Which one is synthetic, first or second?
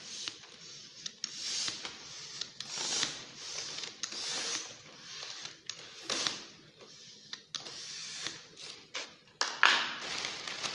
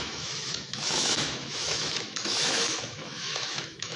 second